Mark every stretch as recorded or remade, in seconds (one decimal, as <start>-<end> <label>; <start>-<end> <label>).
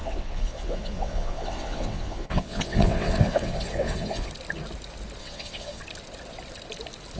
0.0-4.3 remade; 4.3-5.2 recorded; 5.2-5.8 remade; 5.8-7.2 recorded